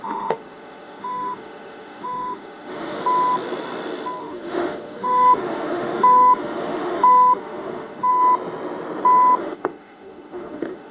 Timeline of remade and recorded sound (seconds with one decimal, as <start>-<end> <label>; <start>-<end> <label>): 0.0-3.0 remade; 3.0-4.2 recorded; 4.2-8.1 remade; 8.1-9.4 recorded; 9.4-10.9 remade